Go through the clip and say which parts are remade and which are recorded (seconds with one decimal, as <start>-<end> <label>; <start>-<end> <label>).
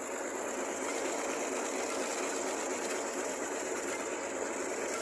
0.0-2.7 recorded; 2.7-3.8 remade; 3.8-5.0 recorded